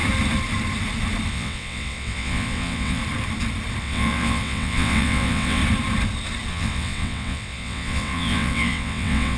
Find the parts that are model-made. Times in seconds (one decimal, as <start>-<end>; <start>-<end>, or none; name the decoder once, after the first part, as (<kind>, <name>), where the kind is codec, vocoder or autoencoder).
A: 1.3-3.0 (vocoder, WaveNeXt); 3.8-5.6; 6.5-9.4